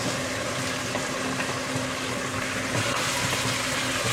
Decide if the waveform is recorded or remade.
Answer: recorded